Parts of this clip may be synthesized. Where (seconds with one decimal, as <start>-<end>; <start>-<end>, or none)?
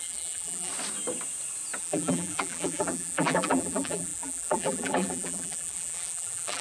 0.0-0.7; 1.8-6.6